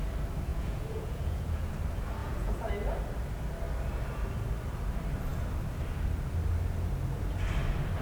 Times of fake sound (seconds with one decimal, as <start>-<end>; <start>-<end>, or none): 0.5-1.7; 2.2-2.7